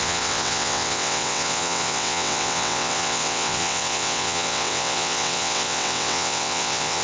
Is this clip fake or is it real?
fake